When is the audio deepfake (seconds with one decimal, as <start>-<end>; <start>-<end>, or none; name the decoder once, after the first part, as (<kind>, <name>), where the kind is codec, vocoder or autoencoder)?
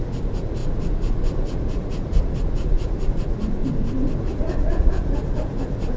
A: 0.0-3.6 (vocoder, Vocos); 4.2-6.0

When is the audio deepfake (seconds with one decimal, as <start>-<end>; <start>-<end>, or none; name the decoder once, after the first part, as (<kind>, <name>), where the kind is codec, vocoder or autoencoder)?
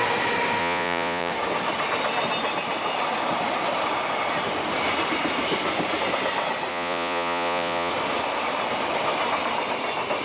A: 0.6-1.3 (vocoder, Vocos); 6.7-7.9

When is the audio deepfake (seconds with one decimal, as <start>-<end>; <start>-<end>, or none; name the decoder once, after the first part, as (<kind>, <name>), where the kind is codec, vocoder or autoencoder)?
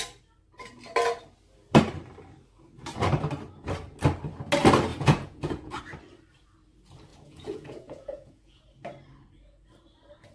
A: 4.9-5.8 (vocoder, Vocos); 7.1-8.6